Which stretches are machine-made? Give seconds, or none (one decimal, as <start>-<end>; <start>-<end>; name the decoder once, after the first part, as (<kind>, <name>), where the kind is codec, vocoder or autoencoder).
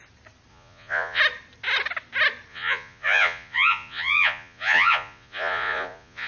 0.5-1.2 (vocoder, Vocos); 2.5-6.3